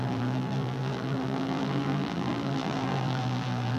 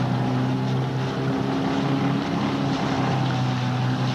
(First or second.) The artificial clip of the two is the first